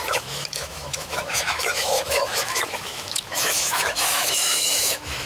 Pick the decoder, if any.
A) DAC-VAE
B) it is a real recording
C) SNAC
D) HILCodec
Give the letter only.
A